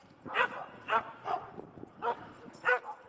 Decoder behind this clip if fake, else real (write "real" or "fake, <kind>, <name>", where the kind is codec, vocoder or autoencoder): fake, vocoder, Vocos